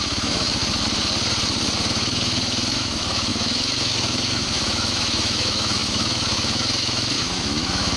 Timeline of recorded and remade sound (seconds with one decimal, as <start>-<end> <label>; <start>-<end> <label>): 0.0-0.6 remade; 0.6-1.9 recorded; 1.9-8.0 remade